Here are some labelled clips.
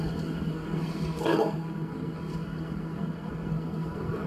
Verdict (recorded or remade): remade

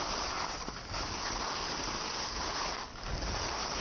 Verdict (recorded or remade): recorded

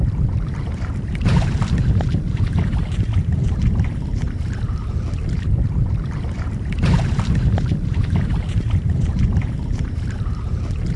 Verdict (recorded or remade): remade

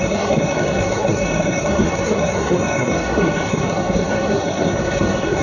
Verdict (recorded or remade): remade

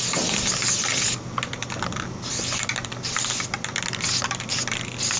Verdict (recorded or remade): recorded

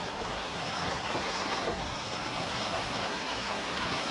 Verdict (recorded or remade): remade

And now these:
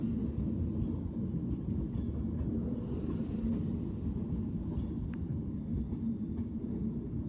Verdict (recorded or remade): recorded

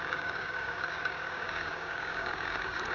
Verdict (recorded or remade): remade